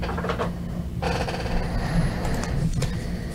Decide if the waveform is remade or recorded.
recorded